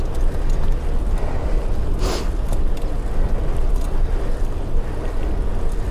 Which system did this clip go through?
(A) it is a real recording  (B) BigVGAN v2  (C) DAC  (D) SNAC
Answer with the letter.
A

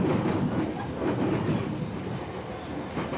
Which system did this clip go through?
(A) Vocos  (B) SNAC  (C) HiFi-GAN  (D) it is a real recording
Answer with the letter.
D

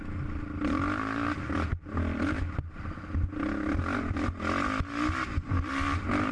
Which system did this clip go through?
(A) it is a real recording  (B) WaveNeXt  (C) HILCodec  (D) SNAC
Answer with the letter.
A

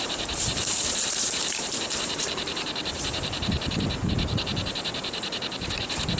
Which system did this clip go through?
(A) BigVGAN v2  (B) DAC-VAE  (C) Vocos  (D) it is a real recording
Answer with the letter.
A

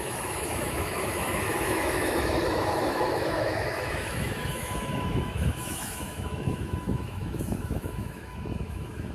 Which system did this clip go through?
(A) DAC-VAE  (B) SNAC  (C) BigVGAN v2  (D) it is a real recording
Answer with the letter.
A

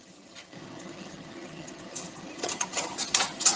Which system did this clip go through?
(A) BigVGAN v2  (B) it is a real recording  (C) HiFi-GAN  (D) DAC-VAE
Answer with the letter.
C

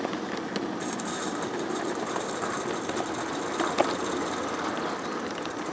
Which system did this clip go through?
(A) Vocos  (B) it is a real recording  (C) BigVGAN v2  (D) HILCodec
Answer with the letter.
B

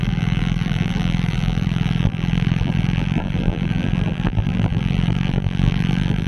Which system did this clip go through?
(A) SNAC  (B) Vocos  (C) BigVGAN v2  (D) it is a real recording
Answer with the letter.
C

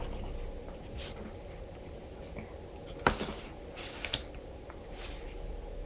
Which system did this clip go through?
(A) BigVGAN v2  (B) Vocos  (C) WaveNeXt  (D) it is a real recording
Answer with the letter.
D